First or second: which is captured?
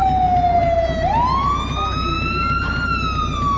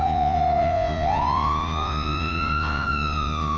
first